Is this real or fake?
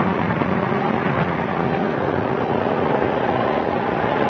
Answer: fake